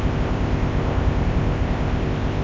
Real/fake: fake